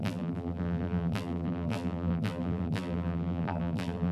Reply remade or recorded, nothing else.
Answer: remade